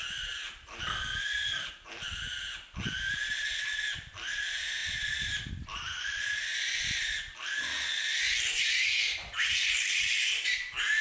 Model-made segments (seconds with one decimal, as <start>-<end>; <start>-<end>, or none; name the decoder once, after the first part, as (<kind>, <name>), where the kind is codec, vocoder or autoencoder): 0.0-11.0 (vocoder, BigVGAN v2)